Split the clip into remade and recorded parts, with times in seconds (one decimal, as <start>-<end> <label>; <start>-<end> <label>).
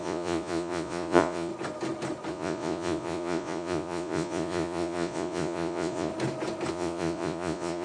0.0-1.5 remade; 1.5-2.3 recorded; 2.3-6.1 remade; 6.1-6.7 recorded; 6.7-7.8 remade